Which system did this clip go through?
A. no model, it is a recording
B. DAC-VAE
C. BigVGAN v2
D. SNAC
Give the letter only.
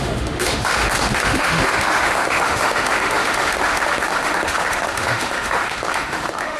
B